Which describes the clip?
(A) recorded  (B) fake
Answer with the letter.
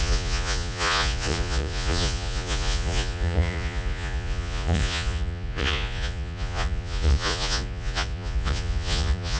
B